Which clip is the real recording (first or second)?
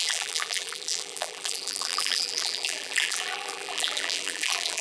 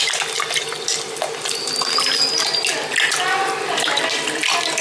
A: second